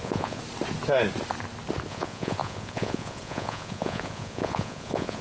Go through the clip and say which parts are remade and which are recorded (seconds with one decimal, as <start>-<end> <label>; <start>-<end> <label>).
0.0-0.4 remade; 0.4-1.9 recorded; 1.9-5.2 remade